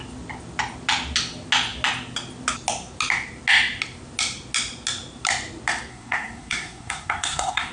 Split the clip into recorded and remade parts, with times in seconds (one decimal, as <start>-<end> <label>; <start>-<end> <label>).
0.0-5.9 recorded; 5.9-7.7 remade